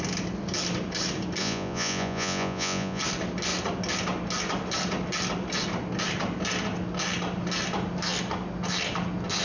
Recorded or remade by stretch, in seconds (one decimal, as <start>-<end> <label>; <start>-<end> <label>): 0.0-1.4 recorded; 1.4-3.0 remade; 3.0-9.4 recorded